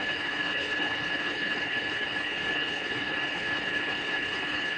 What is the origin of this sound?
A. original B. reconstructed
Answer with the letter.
B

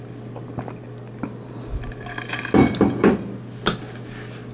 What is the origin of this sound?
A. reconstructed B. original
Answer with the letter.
B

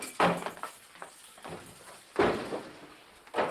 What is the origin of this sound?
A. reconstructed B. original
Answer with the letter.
B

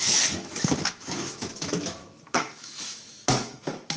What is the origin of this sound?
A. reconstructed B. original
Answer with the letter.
A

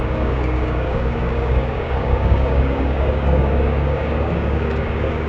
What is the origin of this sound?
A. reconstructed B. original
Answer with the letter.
A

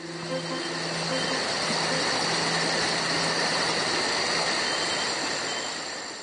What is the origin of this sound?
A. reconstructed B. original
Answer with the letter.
B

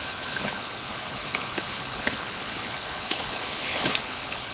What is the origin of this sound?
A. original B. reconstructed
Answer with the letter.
B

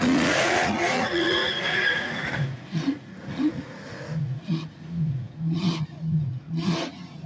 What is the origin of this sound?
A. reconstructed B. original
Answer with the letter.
A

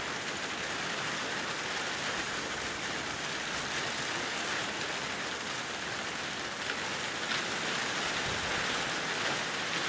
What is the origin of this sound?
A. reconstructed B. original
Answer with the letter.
B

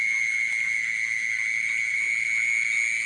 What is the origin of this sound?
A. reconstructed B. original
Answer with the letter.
B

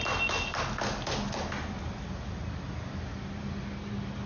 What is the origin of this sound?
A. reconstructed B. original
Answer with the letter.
B